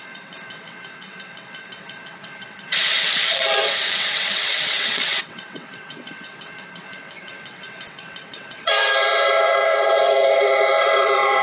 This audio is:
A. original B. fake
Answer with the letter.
B